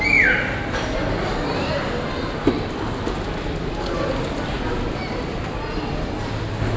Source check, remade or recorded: recorded